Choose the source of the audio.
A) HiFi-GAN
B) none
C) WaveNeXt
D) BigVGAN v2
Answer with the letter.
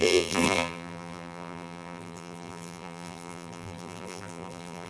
D